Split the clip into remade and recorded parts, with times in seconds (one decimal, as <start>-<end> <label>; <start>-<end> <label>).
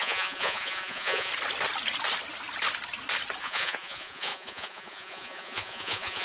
0.0-1.3 remade; 1.3-3.4 recorded; 3.4-6.2 remade